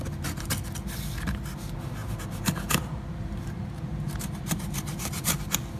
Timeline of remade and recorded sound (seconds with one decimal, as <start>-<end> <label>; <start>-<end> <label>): 0.0-2.0 recorded; 2.0-5.3 remade; 5.3-5.8 recorded